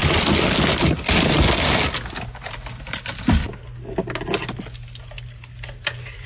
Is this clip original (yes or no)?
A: yes